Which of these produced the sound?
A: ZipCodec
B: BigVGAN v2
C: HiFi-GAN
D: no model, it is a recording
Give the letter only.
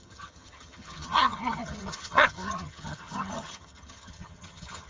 C